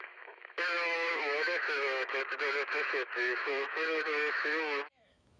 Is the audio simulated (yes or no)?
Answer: yes